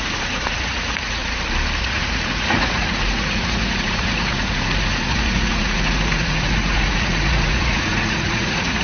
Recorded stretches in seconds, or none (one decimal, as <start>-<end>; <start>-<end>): 1.2-1.8